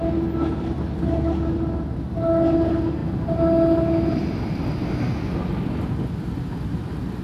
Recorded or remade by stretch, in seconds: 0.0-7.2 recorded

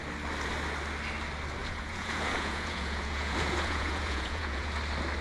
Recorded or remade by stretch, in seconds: 0.0-1.6 recorded; 1.6-4.7 remade; 4.7-5.2 recorded

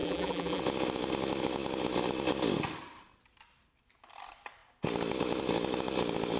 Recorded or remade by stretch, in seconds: 0.0-0.6 remade; 0.6-6.4 recorded

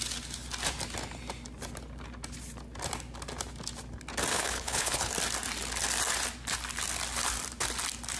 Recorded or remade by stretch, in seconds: 0.0-4.3 recorded; 4.3-5.1 remade; 5.1-8.2 recorded

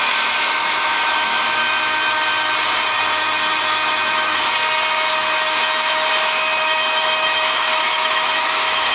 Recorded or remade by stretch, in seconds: 0.0-1.6 remade; 1.6-6.1 recorded; 6.1-8.9 remade